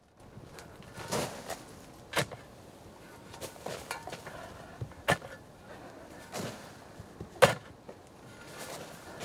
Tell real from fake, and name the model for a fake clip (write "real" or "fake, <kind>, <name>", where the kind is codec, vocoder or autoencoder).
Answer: real